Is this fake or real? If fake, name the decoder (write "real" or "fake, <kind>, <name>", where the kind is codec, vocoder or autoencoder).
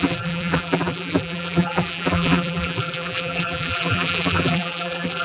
fake, vocoder, BigVGAN v2